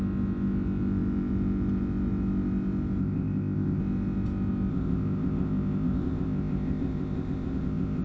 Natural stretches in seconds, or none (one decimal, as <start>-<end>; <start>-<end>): 0.0-3.0; 3.8-4.7